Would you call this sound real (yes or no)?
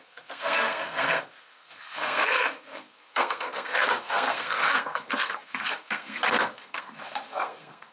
no